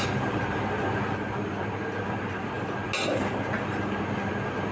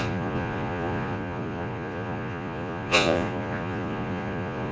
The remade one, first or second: second